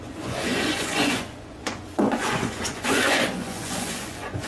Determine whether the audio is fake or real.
fake